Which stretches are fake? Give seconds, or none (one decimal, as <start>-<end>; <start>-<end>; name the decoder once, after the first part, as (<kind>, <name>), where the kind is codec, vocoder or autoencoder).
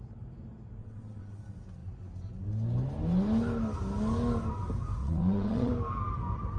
0.8-1.4 (vocoder, WaveNeXt); 5.0-5.7